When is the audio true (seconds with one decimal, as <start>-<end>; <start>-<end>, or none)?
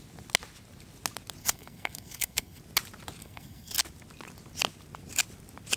0.0-1.4; 2.6-3.2; 3.7-5.8